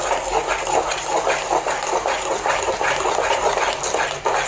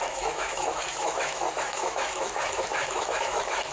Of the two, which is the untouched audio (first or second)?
first